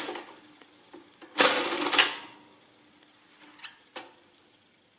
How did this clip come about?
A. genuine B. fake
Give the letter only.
A